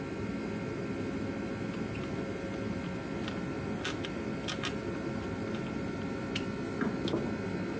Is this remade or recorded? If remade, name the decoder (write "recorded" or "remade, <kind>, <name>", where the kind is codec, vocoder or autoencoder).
recorded